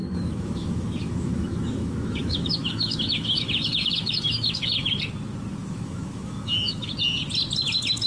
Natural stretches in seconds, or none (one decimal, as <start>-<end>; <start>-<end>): 4.9-5.6; 6.9-8.1